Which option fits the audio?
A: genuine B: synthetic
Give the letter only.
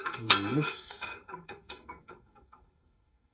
B